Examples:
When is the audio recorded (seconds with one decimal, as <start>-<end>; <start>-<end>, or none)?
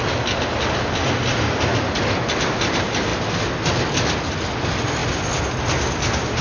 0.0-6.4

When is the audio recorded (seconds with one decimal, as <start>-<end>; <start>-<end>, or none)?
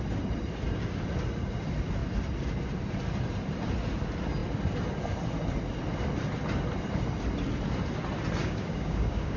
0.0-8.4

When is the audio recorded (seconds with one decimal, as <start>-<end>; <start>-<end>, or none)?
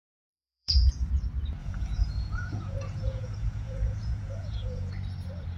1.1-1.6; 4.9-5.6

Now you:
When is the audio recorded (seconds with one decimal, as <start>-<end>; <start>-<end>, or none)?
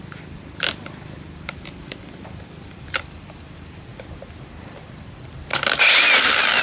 3.9-5.8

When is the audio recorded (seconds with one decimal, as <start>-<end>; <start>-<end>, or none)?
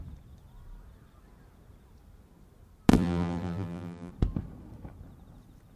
0.0-2.9; 4.1-5.8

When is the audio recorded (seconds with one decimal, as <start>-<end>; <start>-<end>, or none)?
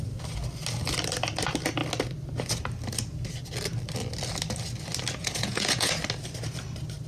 0.0-5.2; 5.9-7.1